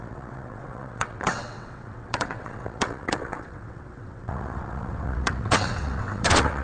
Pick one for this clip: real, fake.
fake